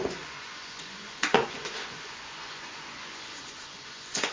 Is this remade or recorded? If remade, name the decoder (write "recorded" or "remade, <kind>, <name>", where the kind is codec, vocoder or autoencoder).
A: remade, vocoder, Vocos